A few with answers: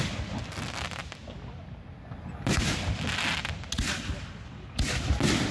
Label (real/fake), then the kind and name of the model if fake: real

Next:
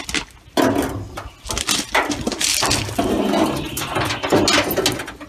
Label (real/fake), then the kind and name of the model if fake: real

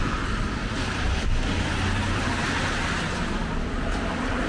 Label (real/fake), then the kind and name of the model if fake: real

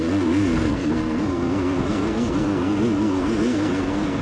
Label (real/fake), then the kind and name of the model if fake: fake, codec, SNAC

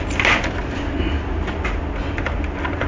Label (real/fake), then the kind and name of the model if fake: real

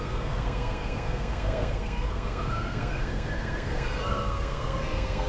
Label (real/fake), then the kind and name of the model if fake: fake, codec, SNAC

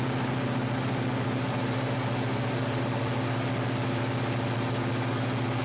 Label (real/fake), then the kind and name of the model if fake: real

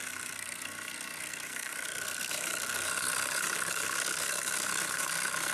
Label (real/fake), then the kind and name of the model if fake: fake, codec, SNAC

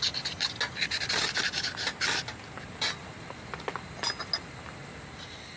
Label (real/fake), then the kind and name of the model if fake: real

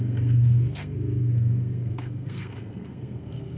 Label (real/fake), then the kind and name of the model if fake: fake, codec, SNAC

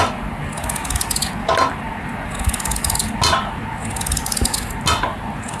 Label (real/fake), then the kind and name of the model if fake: real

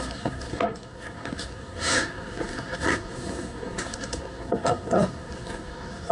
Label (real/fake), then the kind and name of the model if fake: fake, codec, SNAC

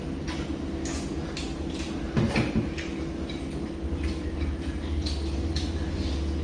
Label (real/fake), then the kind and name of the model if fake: real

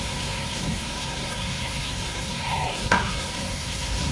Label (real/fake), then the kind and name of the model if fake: fake, codec, SNAC